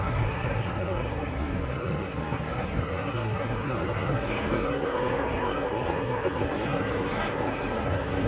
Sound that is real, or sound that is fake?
fake